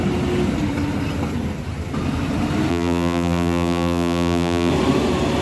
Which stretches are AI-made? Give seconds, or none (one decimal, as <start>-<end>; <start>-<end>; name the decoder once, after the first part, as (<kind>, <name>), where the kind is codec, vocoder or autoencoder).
2.7-4.7 (vocoder, BigVGAN v2)